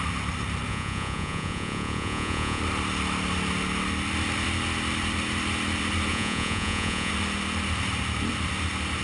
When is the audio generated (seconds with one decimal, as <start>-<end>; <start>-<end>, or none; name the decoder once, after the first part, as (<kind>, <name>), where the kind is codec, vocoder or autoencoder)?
0.7-2.6 (vocoder, Vocos); 6.1-7.1